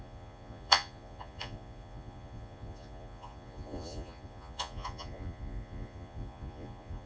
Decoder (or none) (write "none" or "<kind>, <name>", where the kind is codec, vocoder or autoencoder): vocoder, Vocos